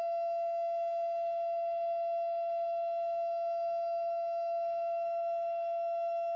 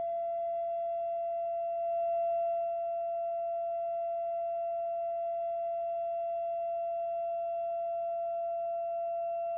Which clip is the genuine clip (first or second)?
second